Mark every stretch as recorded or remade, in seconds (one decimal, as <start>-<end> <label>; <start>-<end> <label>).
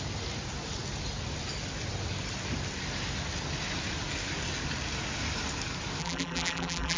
0.0-6.0 recorded; 6.0-7.0 remade